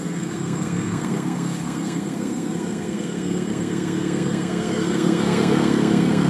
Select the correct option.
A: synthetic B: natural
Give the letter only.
A